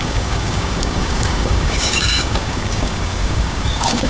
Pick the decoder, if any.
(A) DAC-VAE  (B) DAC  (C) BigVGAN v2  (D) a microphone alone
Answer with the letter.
B